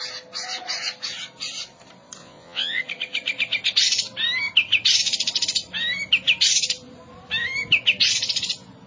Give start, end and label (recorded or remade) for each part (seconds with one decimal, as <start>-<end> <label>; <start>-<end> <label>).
0.0-2.2 recorded; 2.2-2.8 remade; 2.8-8.9 recorded